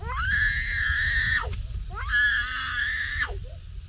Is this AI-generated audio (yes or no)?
no